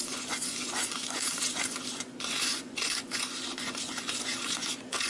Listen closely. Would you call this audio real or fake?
fake